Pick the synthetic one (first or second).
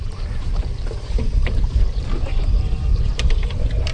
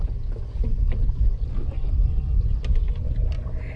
first